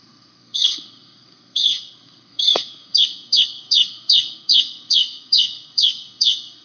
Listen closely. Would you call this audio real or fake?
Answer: fake